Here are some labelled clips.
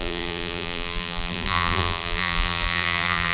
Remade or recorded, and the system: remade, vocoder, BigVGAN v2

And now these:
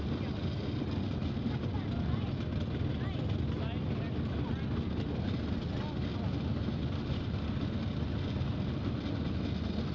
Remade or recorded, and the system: recorded